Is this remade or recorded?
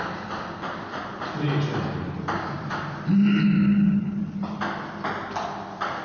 recorded